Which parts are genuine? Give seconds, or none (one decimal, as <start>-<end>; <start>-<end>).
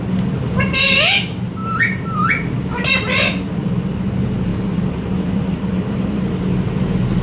0.0-7.2